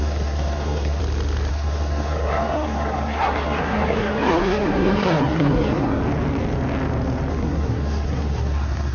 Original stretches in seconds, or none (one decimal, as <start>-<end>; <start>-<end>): 1.0-1.5; 6.0-7.3